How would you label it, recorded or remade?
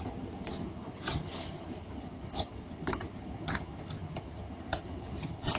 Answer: remade